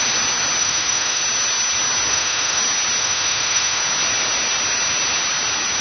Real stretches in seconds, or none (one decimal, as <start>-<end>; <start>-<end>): 0.0-0.6; 1.2-2.1; 2.6-3.0; 3.8-5.8